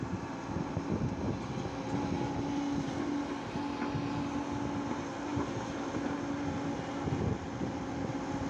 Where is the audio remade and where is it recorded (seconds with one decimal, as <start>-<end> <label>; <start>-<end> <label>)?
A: 0.0-8.5 recorded